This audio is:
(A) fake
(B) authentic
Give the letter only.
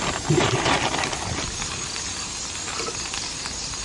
B